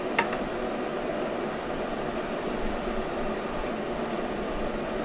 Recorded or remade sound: recorded